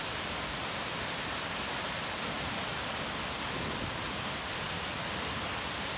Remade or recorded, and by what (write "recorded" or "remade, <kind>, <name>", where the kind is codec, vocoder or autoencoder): recorded